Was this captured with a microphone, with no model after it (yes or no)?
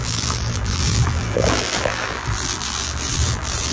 no